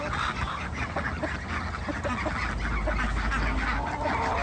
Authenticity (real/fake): real